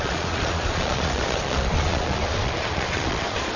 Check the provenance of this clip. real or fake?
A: fake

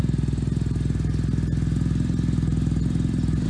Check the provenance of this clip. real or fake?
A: real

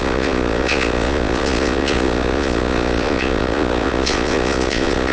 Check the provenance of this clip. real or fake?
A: fake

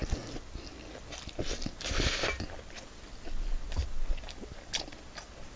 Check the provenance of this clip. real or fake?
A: real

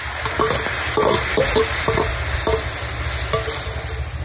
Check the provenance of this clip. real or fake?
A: real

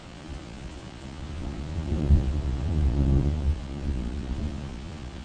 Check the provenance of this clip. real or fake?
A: fake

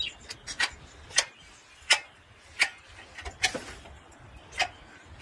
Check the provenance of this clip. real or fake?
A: real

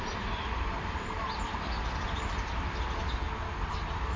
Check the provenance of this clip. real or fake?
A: real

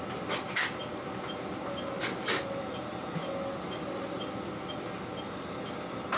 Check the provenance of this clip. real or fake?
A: real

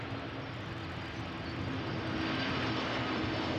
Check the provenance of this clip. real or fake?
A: real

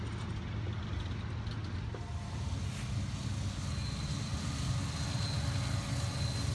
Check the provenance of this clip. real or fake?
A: real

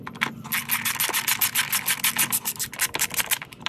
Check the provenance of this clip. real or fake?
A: real